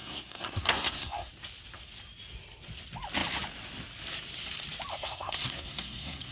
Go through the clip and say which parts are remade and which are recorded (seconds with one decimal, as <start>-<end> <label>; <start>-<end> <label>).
0.0-1.3 remade; 1.3-4.9 recorded; 4.9-6.3 remade